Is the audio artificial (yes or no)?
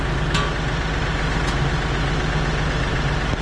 no